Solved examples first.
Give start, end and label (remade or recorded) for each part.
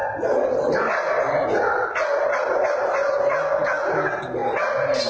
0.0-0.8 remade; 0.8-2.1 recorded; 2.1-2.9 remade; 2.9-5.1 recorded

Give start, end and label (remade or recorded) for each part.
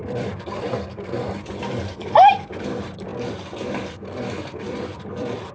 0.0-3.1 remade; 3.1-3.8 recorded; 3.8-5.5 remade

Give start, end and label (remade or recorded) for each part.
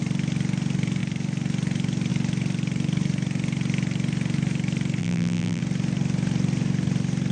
0.0-5.0 recorded; 5.0-5.6 remade; 5.6-7.3 recorded